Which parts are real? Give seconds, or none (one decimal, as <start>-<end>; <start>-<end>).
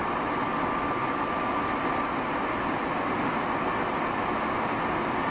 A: 0.0-5.3